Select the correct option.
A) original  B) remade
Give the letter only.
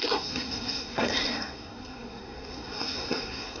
B